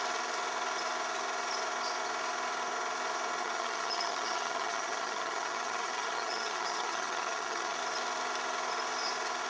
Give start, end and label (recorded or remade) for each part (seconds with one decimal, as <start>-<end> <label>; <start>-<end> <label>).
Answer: 0.0-3.4 recorded; 3.4-7.8 remade; 7.8-9.5 recorded